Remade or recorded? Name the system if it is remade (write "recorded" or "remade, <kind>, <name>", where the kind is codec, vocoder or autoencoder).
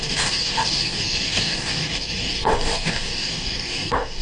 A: remade, codec, DAC